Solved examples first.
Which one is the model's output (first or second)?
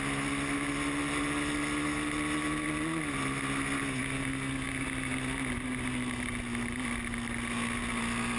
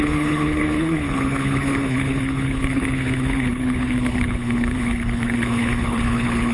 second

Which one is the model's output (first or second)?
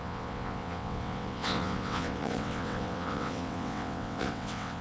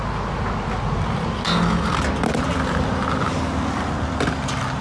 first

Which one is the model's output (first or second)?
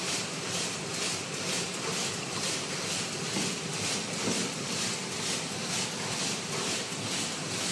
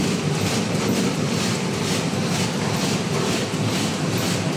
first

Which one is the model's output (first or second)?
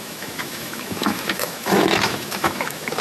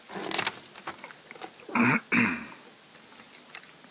first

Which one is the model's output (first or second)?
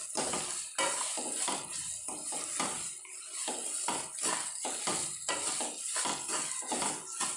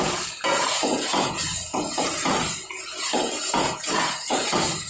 second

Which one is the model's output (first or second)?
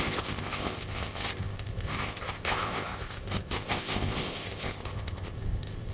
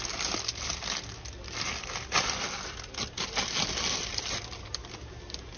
first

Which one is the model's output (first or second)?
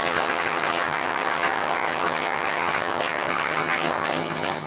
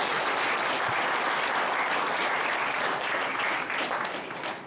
first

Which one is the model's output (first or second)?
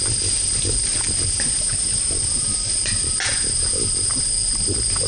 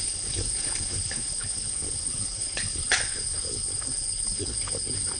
second